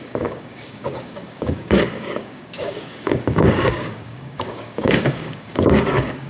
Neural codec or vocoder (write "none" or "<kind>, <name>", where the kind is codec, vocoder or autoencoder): codec, DAC